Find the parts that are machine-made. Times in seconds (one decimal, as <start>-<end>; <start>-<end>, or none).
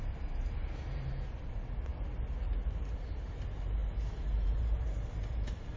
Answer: 0.0-1.9; 2.9-5.8